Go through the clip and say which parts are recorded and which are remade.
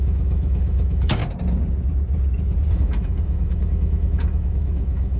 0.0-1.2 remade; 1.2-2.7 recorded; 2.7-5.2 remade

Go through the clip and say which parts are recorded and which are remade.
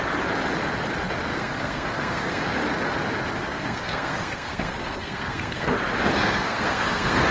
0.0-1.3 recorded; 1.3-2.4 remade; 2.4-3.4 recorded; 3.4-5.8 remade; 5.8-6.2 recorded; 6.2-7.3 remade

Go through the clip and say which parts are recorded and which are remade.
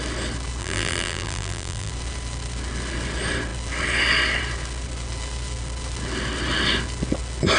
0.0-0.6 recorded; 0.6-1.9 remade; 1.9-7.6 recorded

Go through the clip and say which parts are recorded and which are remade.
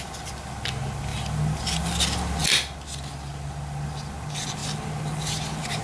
0.0-5.8 recorded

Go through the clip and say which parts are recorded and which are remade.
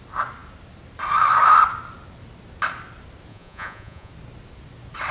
0.0-3.3 recorded; 3.3-4.1 remade; 4.1-5.1 recorded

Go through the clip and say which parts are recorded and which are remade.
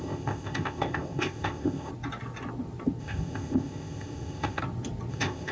0.0-1.9 remade; 1.9-3.0 recorded; 3.0-4.6 remade; 4.6-5.1 recorded; 5.1-5.5 remade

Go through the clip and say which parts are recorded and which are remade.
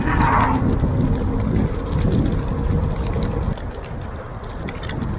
0.0-5.2 recorded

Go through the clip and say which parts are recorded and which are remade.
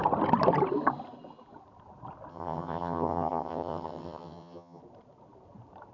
0.0-2.3 recorded; 2.3-4.8 remade; 4.8-5.9 recorded